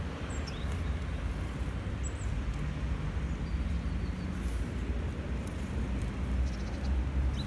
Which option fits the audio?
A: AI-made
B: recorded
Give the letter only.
B